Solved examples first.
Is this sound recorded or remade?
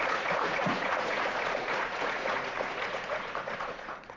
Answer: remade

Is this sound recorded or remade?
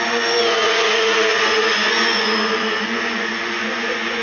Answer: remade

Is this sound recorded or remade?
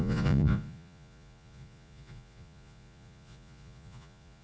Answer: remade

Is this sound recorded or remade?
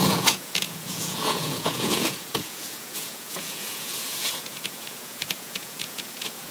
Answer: remade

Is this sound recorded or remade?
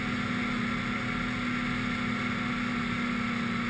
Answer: recorded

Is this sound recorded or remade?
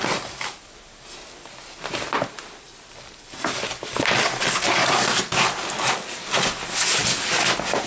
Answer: recorded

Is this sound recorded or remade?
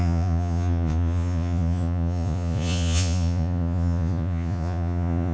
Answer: remade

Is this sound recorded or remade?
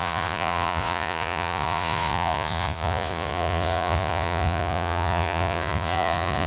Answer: remade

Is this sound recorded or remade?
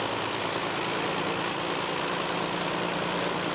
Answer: recorded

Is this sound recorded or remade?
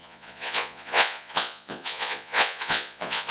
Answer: remade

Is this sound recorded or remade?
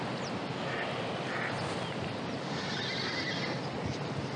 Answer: recorded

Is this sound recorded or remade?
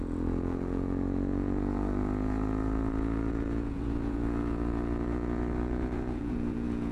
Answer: remade